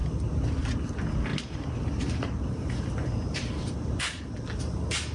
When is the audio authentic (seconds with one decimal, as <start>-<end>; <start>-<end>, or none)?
0.0-1.3; 4.2-5.1